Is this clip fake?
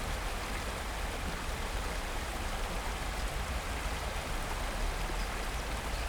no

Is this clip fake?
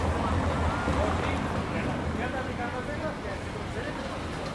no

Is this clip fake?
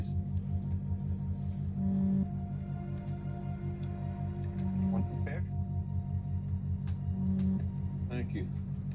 no